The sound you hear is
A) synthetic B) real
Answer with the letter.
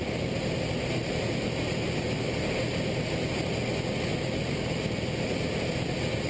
B